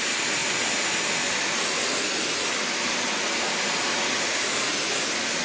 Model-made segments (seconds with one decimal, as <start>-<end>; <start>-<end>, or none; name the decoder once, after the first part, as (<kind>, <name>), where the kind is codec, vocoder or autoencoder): 3.9-5.4 (vocoder, Vocos)